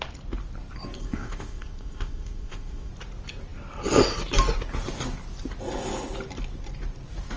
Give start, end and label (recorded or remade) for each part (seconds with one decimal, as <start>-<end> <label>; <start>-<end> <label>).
0.0-1.0 recorded; 1.0-2.9 remade; 2.9-7.4 recorded